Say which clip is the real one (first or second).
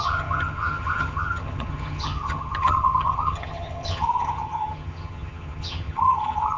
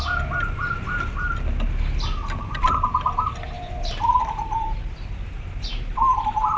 second